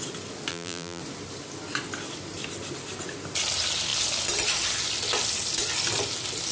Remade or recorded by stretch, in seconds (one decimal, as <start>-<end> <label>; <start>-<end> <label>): 0.0-0.5 recorded; 0.5-1.0 remade; 1.0-6.5 recorded